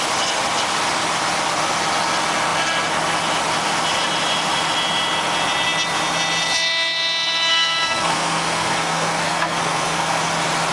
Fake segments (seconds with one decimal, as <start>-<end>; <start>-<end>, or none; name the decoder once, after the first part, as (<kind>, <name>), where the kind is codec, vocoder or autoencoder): 7.5-10.2 (codec, SNAC)